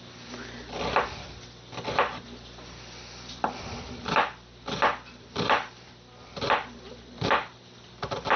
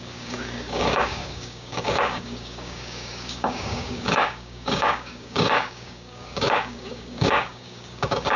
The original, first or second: first